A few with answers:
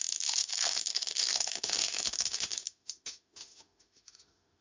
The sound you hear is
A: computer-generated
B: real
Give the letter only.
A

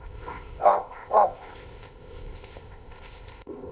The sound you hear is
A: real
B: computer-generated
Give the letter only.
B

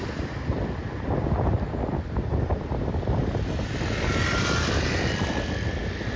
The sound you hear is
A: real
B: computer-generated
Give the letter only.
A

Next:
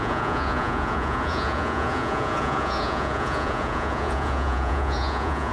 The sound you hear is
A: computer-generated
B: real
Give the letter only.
A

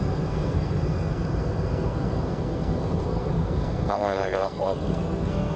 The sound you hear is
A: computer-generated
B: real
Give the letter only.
A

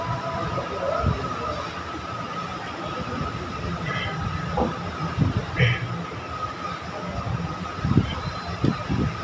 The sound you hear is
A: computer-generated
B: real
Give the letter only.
B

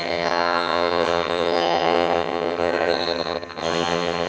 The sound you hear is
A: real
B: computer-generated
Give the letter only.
B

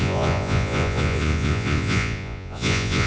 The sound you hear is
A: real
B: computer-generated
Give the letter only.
B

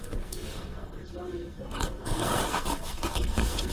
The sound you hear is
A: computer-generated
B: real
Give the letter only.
A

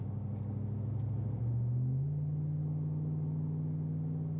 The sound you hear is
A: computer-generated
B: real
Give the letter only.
B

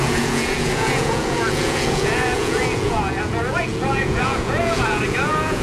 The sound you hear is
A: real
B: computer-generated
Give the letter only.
B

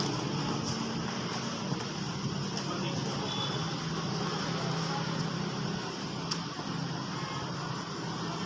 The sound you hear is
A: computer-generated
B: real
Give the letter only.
B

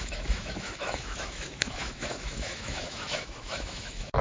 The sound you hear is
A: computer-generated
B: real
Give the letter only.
A